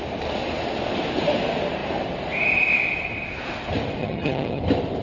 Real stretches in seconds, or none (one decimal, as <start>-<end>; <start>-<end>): 0.0-4.0; 4.6-5.0

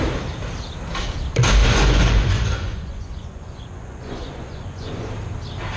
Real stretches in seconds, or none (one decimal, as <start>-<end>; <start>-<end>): 0.0-1.6; 5.1-5.8

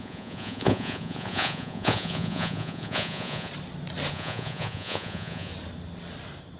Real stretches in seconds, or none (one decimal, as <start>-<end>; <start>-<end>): 3.5-4.1; 5.5-6.6

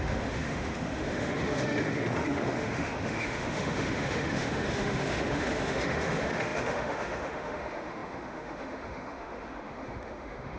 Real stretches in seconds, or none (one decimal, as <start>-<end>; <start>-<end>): none

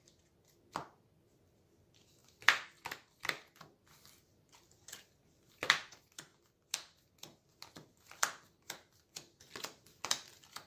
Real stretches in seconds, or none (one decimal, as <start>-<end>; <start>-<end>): 0.0-10.7

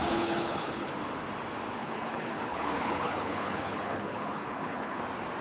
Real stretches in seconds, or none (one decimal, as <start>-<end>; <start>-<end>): 0.9-1.8; 5.0-5.4

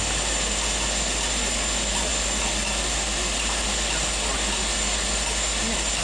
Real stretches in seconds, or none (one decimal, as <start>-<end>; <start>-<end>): 0.0-6.0

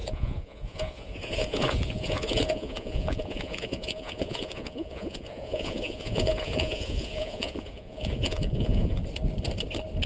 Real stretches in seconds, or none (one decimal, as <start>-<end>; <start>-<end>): 9.0-10.1